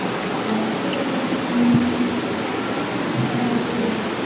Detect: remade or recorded recorded